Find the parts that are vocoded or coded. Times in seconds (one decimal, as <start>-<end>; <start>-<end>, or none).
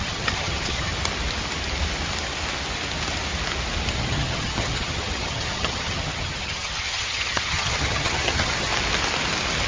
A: 0.0-0.9; 3.9-8.7